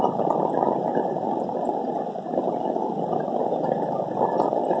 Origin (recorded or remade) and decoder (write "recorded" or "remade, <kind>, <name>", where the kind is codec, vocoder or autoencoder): recorded